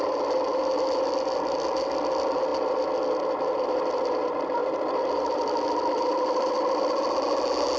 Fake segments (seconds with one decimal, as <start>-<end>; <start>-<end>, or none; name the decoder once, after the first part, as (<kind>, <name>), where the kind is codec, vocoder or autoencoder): none